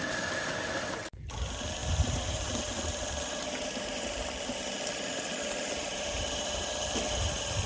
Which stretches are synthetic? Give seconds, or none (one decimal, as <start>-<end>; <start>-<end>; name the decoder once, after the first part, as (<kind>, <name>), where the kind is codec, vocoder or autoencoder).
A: 1.8-4.0 (vocoder, BigVGAN v2); 5.9-6.7

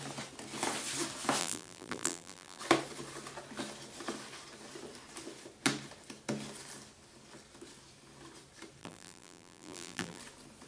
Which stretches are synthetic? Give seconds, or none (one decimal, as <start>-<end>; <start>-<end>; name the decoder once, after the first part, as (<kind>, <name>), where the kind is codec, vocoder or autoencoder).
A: 1.4-2.6 (vocoder, BigVGAN v2); 8.8-10.2

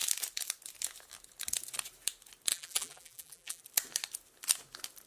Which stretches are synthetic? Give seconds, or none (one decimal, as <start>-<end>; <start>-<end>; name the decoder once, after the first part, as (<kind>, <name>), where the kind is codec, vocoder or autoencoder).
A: 2.5-3.6 (vocoder, BigVGAN v2)

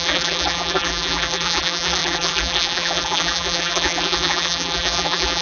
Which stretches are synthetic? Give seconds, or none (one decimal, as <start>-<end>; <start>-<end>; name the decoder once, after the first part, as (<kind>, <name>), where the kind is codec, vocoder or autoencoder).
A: 0.0-5.4 (vocoder, BigVGAN v2)

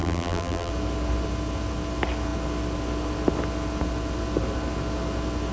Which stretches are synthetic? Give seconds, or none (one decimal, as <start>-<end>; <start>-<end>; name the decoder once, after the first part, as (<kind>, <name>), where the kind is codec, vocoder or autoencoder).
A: 0.0-0.7 (vocoder, BigVGAN v2)

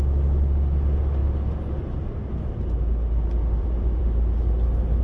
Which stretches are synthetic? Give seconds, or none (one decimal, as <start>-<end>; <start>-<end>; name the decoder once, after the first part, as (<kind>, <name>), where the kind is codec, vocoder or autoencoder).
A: 0.0-1.2 (vocoder, BigVGAN v2); 3.6-4.0

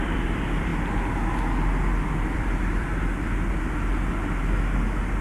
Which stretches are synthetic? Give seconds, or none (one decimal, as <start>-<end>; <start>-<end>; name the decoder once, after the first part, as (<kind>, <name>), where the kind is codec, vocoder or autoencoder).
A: 0.0-0.7 (vocoder, BigVGAN v2); 1.9-2.9

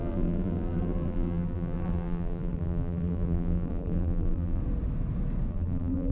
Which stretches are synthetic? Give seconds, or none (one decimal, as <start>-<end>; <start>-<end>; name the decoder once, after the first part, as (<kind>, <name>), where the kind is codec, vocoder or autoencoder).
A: 0.0-4.6 (vocoder, BigVGAN v2); 5.5-6.1